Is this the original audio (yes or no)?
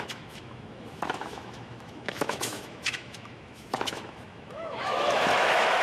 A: no